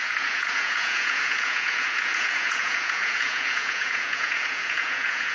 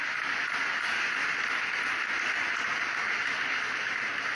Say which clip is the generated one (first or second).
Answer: first